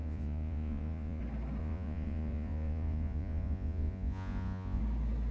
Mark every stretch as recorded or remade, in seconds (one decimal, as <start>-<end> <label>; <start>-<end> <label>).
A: 0.0-1.2 remade; 1.2-1.6 recorded; 1.6-4.8 remade; 4.8-5.3 recorded